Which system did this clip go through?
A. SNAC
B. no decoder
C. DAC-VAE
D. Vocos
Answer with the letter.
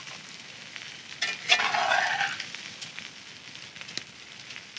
B